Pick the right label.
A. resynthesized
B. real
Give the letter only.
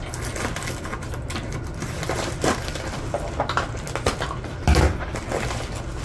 B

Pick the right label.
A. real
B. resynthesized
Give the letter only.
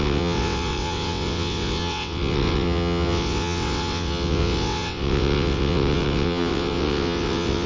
B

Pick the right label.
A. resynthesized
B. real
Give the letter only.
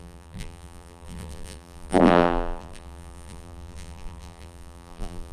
A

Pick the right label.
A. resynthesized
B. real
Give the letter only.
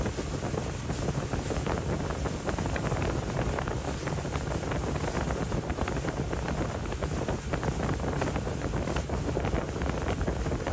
B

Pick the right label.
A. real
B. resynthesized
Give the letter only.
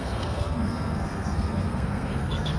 B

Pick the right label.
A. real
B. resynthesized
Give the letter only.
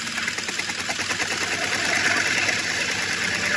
A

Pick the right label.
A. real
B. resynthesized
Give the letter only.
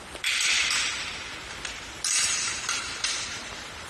A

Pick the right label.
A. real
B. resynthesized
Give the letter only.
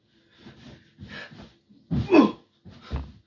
A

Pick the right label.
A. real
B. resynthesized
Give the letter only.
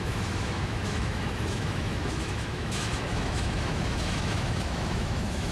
B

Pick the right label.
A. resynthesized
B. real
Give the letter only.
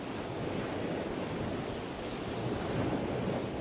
B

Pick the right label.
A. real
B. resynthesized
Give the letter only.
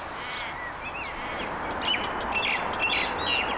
A